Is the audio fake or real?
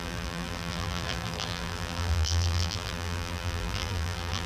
fake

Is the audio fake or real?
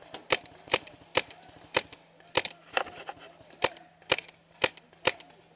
real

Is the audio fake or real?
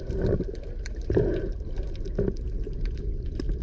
real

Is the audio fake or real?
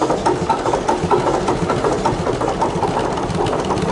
real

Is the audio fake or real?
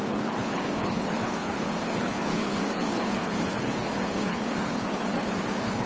fake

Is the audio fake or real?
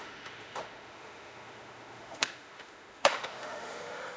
fake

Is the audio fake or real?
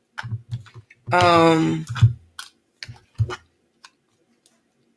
real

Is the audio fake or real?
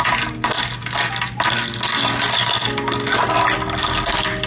real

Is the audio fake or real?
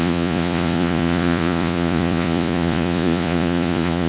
fake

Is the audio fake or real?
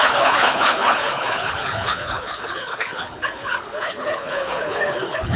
fake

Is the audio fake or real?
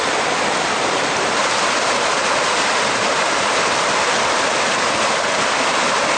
real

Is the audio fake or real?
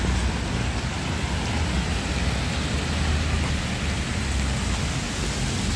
real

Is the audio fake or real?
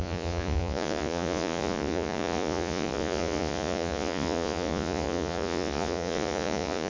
fake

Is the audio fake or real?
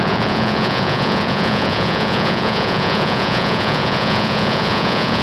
fake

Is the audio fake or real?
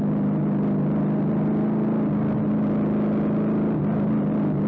real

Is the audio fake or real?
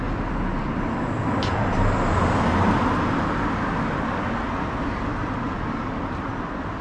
real